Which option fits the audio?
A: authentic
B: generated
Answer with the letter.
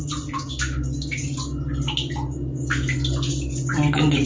A